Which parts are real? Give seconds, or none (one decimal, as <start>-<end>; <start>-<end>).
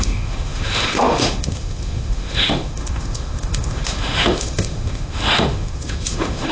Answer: none